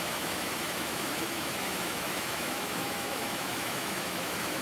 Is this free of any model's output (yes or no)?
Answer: no